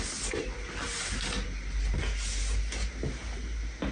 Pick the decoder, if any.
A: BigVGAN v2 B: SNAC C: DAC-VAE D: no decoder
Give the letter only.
D